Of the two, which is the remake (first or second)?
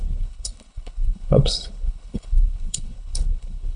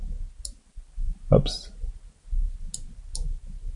first